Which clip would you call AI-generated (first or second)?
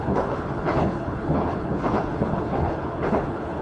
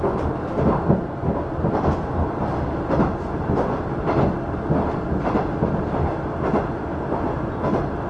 first